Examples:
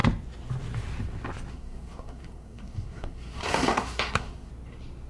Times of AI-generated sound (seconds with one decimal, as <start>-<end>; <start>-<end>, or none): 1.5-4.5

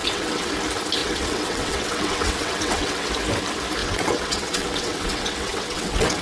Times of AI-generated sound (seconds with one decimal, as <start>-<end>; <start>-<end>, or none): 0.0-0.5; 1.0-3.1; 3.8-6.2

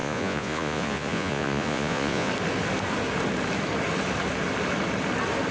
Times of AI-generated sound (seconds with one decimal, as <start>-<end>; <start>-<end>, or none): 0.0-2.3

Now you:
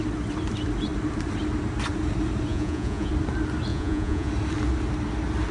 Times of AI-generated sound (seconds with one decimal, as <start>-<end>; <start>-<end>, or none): 2.5-3.1; 3.7-4.3